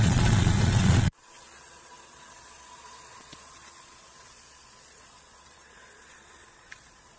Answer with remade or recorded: remade